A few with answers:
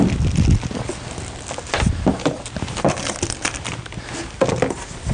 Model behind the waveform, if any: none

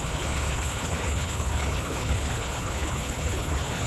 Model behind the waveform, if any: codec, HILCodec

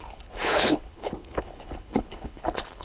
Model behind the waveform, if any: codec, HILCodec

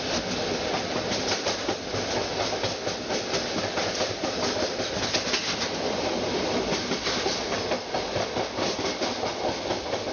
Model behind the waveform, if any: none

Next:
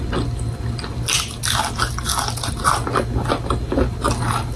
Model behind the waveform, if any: none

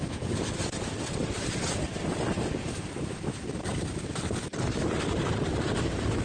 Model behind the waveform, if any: none